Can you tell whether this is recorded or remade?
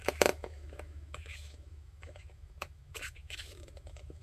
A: remade